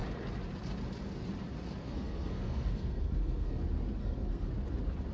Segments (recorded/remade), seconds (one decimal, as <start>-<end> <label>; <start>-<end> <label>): 0.0-1.8 recorded; 1.8-3.6 remade; 3.6-4.0 recorded; 4.0-4.5 remade; 4.5-5.1 recorded